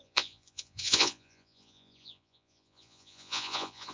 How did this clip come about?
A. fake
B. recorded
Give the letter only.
A